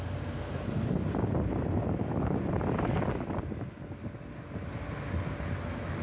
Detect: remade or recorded recorded